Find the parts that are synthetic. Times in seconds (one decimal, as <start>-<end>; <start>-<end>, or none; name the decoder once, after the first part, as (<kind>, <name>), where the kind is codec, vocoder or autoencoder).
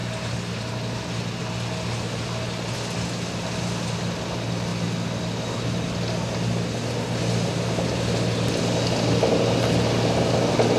none